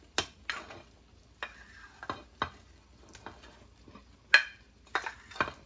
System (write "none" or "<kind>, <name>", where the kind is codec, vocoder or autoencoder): none